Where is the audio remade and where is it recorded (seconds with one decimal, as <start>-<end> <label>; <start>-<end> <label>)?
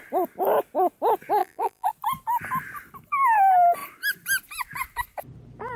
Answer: 0.0-1.4 recorded; 1.4-1.9 remade; 1.9-5.8 recorded